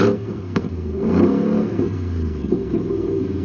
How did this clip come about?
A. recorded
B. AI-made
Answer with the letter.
B